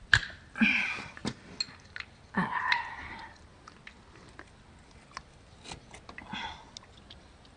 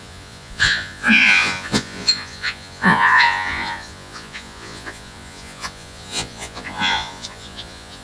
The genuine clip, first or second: first